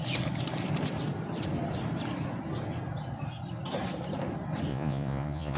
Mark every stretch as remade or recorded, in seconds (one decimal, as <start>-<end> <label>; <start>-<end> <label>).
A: 0.0-4.7 recorded; 4.7-5.6 remade